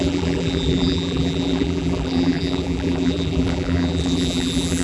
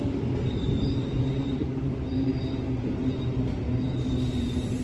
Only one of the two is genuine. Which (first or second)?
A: second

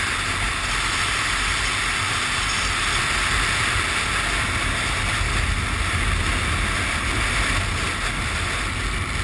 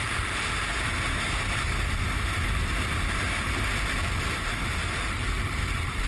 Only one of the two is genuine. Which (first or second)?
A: first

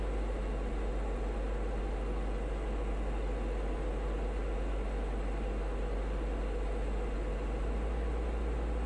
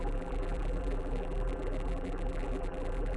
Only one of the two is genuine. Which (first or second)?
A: first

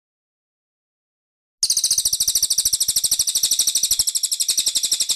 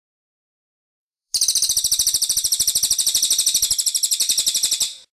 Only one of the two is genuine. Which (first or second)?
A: first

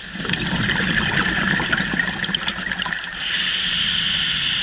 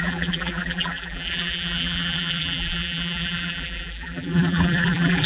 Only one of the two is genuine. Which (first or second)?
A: first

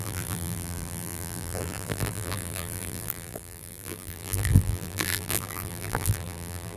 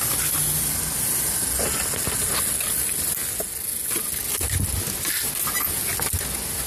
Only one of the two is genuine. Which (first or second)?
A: second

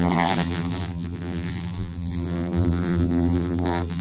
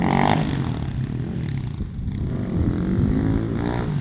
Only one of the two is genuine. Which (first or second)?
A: second